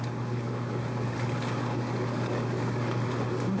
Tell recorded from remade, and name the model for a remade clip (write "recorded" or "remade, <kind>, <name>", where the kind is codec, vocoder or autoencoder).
remade, codec, DAC